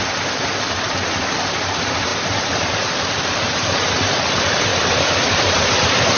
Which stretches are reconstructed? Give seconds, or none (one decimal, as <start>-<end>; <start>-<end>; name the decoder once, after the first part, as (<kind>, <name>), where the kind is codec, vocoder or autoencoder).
2.1-2.7 (vocoder, BigVGAN v2); 4.7-5.6